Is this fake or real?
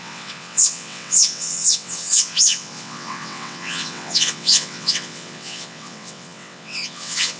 fake